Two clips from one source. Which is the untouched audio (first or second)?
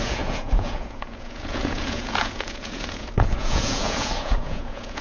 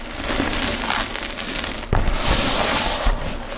second